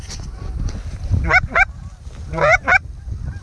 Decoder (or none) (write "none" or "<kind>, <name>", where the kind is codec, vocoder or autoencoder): none